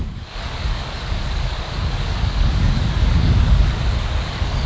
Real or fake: fake